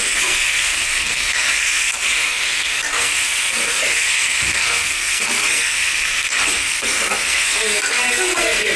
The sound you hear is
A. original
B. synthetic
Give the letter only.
B